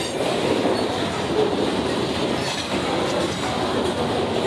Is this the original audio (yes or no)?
yes